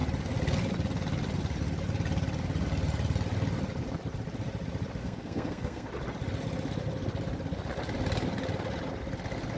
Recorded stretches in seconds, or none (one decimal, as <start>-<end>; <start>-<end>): 0.0-5.0; 5.9-9.6